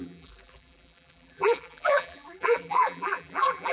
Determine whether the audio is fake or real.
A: fake